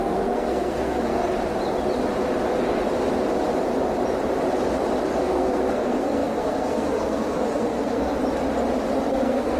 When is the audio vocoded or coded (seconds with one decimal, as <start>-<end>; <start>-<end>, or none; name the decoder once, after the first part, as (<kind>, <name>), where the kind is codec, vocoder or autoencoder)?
0.0-1.2 (codec, SNAC); 5.2-8.2; 9.1-9.6